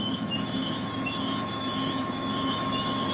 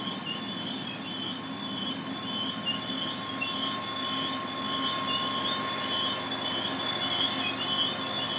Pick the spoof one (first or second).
first